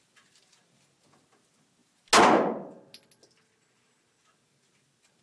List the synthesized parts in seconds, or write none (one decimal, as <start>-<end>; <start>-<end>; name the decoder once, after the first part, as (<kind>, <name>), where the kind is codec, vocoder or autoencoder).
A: none